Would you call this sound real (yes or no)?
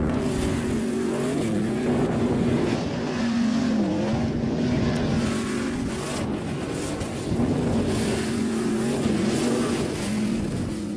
no